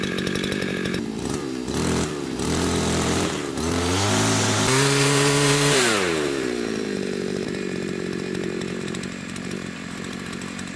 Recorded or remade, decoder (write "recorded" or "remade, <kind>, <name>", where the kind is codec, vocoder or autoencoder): remade, vocoder, BigVGAN v2